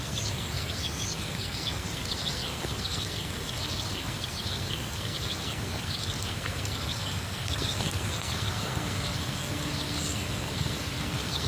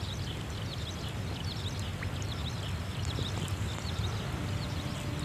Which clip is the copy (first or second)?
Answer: first